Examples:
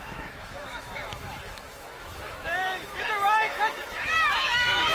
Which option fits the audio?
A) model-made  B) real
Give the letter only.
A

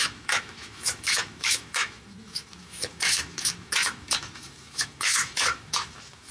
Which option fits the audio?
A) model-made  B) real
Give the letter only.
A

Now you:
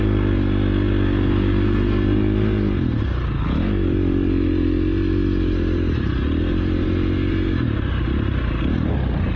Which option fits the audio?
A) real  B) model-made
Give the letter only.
A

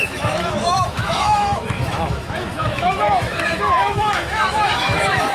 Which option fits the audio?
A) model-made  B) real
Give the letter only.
A